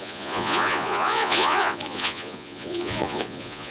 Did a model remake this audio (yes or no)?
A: yes